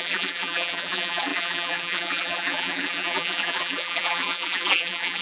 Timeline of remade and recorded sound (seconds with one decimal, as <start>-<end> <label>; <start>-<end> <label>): 0.0-5.2 remade